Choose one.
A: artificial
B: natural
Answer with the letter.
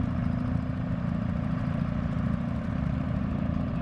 B